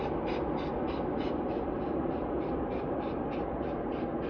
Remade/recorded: recorded